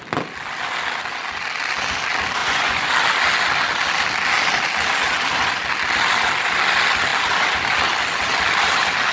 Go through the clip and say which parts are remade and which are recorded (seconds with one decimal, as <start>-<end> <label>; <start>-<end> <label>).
0.0-2.4 recorded; 2.4-2.9 remade; 2.9-9.1 recorded